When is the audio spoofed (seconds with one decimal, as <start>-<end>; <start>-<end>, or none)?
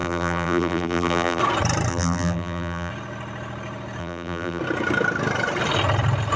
0.0-1.4; 1.9-2.9; 4.0-4.6